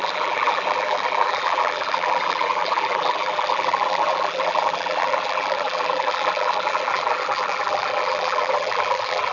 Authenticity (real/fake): fake